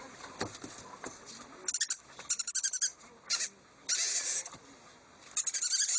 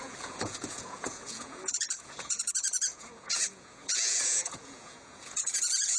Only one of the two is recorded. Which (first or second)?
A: first